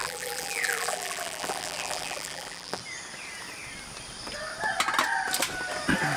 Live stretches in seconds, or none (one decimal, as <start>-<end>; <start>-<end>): 2.8-6.2